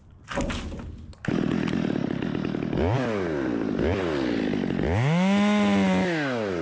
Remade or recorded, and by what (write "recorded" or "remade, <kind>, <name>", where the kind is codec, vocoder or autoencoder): recorded